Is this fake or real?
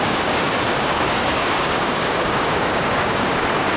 fake